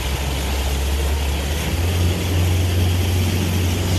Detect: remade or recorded recorded